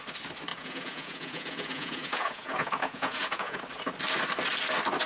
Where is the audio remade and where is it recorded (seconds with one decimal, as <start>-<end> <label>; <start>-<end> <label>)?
0.0-0.5 recorded; 0.5-3.6 remade; 3.6-5.1 recorded